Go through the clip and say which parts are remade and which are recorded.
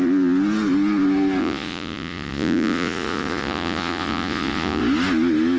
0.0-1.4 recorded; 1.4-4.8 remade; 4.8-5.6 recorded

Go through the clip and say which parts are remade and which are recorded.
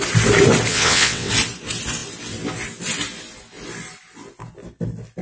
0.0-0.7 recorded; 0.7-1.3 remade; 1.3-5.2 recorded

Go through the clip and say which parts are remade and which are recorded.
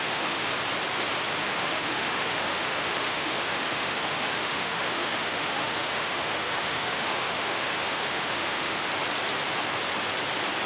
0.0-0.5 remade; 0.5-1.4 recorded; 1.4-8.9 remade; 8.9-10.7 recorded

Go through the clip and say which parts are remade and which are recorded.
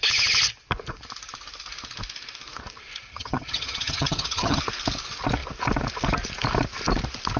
0.0-3.1 recorded; 3.1-4.6 remade; 4.6-7.4 recorded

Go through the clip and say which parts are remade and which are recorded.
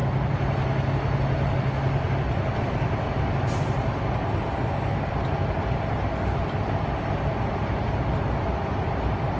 0.0-9.4 recorded